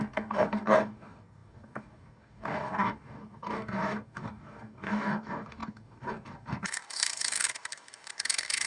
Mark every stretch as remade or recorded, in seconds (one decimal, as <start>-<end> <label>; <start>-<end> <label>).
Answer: 0.0-8.7 remade